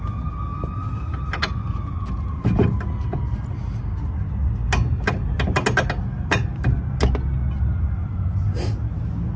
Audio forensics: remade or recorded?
recorded